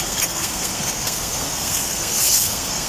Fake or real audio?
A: fake